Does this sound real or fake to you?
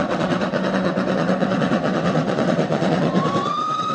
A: fake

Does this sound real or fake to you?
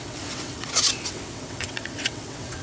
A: fake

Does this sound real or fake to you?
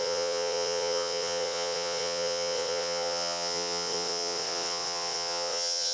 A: fake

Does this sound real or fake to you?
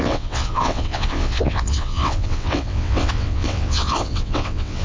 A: fake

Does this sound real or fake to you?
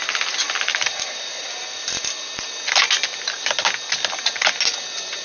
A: real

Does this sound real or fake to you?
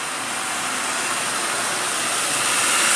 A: real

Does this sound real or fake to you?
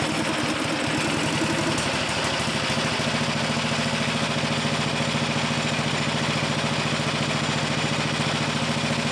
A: real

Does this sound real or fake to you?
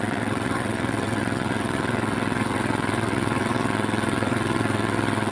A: fake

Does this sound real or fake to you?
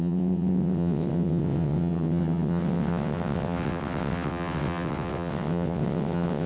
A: fake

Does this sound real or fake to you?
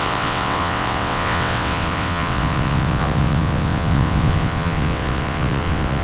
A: fake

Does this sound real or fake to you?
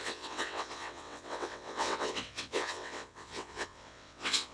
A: fake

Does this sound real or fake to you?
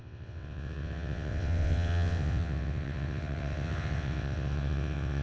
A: fake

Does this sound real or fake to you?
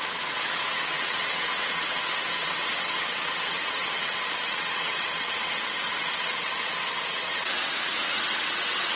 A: fake